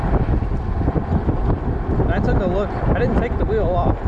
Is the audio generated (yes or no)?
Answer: no